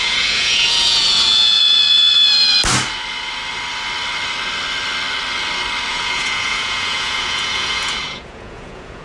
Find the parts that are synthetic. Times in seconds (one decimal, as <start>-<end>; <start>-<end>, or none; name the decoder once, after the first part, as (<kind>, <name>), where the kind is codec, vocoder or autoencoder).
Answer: 0.0-1.6 (vocoder, Vocos); 5.9-9.0

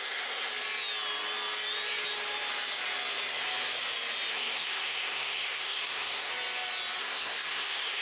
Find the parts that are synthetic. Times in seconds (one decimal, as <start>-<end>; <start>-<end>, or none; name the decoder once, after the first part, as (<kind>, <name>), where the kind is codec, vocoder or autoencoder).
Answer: 0.0-0.5 (codec, SNAC); 4.3-6.3; 7.0-8.0

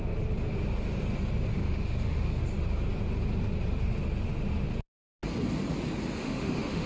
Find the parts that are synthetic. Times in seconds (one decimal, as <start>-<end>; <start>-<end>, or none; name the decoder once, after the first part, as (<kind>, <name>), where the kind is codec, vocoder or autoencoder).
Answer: 1.5-2.4 (autoencoder, DAC-VAE); 6.2-6.9

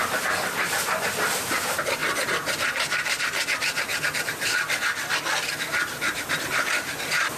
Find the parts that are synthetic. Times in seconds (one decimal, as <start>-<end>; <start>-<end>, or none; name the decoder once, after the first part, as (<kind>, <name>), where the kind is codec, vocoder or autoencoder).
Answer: 0.0-2.0 (vocoder, BigVGAN v2); 6.3-7.4

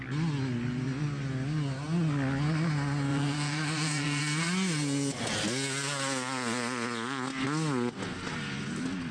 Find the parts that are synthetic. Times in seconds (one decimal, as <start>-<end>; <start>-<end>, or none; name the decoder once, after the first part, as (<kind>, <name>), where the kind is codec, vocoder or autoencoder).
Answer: 3.1-4.2 (vocoder, BigVGAN v2)